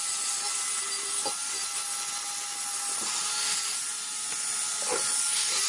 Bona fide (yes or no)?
yes